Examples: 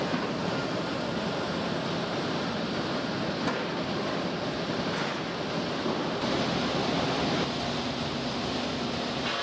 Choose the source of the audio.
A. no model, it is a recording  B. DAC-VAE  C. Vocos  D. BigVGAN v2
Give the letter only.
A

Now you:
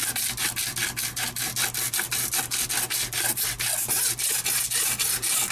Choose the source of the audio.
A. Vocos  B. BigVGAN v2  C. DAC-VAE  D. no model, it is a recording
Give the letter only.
D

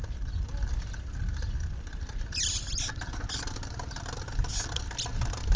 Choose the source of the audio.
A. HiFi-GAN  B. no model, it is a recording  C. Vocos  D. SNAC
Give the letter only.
B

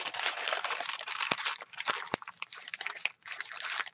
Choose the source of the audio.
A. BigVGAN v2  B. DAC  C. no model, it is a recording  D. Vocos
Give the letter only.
A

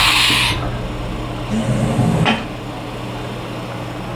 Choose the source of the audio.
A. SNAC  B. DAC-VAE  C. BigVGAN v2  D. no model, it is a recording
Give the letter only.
D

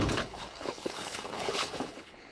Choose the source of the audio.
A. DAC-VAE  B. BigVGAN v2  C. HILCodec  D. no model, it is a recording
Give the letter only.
C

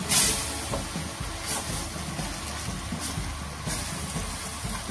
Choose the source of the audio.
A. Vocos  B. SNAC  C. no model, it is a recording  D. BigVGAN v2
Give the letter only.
C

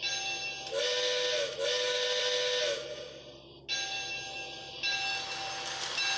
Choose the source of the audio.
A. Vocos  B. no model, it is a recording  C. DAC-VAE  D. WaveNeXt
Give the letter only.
B